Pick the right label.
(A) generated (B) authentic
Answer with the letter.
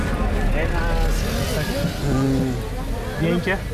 B